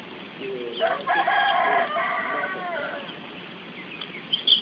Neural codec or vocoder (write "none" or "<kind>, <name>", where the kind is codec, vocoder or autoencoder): none